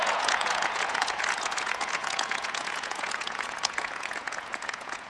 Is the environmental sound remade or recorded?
remade